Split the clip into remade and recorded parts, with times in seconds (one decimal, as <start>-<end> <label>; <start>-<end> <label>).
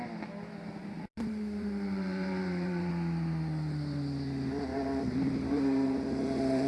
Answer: 0.0-0.8 recorded; 0.8-2.9 remade; 2.9-4.7 recorded; 4.7-6.7 remade